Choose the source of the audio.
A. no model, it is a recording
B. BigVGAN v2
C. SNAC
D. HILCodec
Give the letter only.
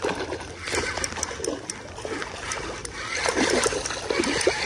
A